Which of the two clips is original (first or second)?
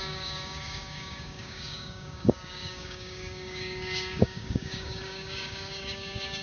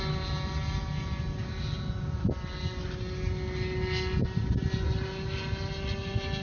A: second